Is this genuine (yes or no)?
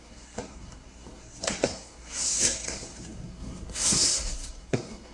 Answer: no